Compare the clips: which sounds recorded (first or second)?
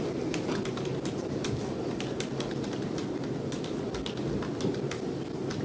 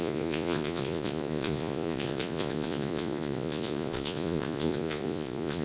first